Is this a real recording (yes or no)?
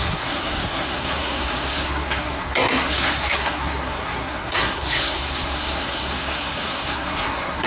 no